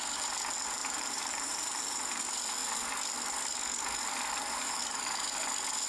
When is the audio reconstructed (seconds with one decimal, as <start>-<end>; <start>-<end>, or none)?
0.8-2.2